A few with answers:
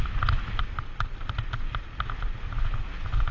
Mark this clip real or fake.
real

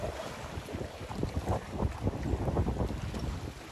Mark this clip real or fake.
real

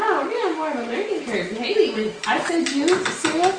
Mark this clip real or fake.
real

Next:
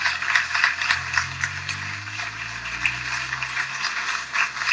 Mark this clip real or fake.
real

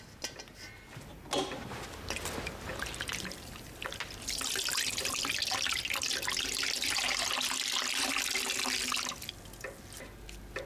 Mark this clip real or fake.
real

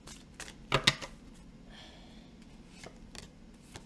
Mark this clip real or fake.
real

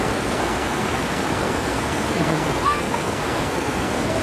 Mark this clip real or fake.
fake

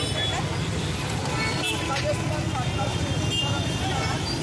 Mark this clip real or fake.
real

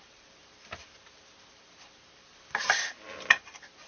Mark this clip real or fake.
fake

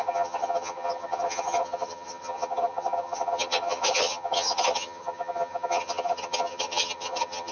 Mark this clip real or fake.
fake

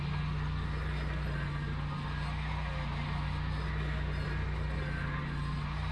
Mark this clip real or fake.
real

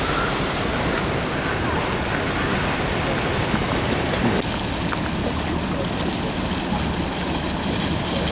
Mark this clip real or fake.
real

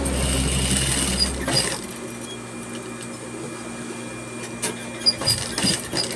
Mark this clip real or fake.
real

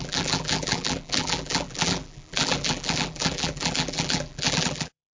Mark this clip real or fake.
fake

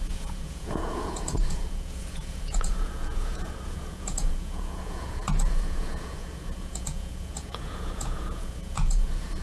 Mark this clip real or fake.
fake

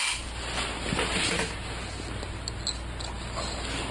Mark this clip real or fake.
real